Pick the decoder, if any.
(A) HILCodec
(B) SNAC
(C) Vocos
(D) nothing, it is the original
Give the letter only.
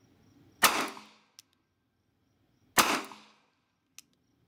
D